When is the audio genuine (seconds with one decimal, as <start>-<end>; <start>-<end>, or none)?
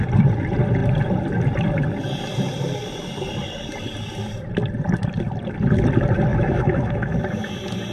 0.0-6.3; 7.2-7.9